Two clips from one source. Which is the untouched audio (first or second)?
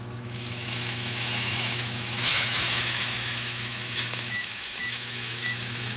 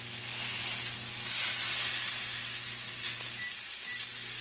second